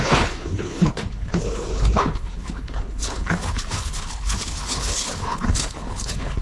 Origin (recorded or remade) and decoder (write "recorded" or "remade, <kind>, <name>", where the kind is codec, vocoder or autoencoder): remade, codec, HILCodec